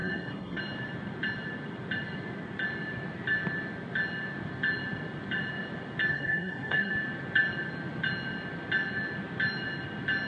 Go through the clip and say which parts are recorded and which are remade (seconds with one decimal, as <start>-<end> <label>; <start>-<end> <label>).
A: 0.0-0.6 remade; 0.6-6.1 recorded; 6.1-6.9 remade; 6.9-10.3 recorded